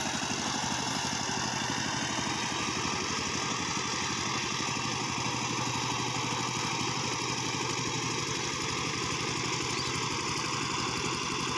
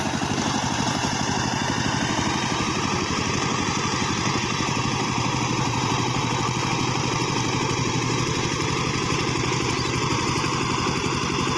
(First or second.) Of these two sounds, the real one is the first